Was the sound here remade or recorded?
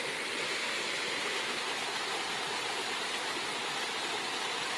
recorded